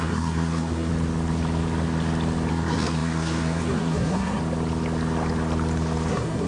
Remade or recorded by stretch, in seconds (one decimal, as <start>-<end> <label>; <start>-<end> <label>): 0.0-0.9 remade; 0.9-2.5 recorded; 2.5-4.4 remade; 4.4-6.1 recorded; 6.1-6.5 remade